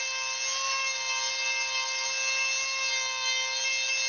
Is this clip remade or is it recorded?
recorded